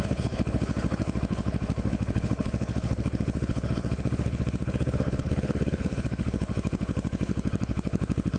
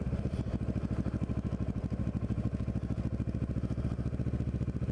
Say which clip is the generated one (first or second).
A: first